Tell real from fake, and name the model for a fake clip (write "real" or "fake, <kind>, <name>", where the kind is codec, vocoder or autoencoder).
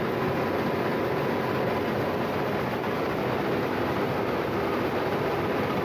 real